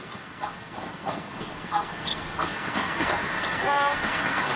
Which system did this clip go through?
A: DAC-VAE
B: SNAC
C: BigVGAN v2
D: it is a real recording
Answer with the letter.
B